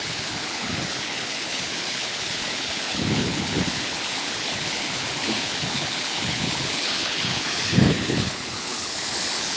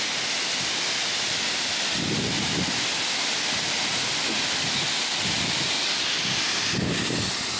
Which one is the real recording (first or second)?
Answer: second